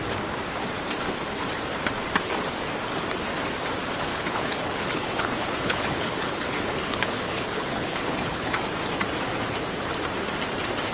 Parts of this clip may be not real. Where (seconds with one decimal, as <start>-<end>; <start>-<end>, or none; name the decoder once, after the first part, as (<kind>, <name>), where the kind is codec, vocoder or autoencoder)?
4.1-8.6 (codec, HILCodec)